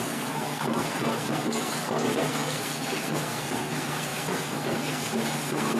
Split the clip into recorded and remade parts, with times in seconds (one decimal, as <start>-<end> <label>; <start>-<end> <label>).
0.0-5.8 remade